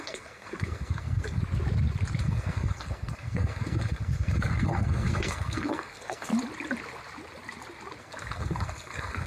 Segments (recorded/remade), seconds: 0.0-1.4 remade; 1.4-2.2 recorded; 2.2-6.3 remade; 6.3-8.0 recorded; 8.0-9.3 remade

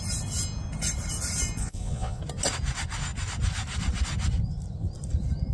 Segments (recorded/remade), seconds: 0.0-1.6 recorded; 1.6-2.2 remade; 2.2-5.5 recorded

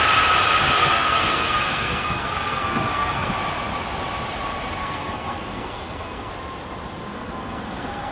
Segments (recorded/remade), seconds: 0.0-0.8 recorded; 0.8-3.3 remade; 3.3-4.8 recorded; 4.8-6.3 remade; 6.3-7.1 recorded; 7.1-8.1 remade

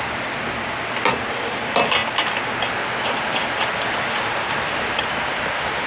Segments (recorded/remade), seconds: 0.0-5.9 recorded

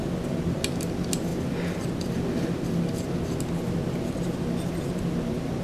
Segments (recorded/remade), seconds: 0.0-5.6 recorded

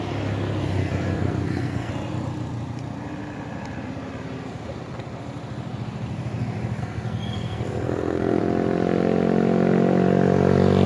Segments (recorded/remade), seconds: 0.0-0.8 recorded; 0.8-1.9 remade; 1.9-6.8 recorded; 6.8-8.4 remade; 8.4-10.9 recorded

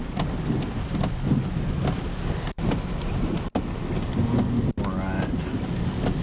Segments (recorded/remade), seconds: 0.0-6.2 recorded

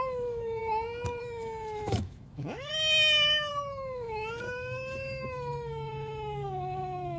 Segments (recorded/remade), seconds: 0.0-0.6 remade; 0.6-1.2 recorded; 1.2-2.7 remade; 2.7-3.5 recorded; 3.5-7.2 remade